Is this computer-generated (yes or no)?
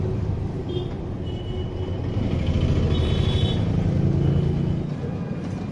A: no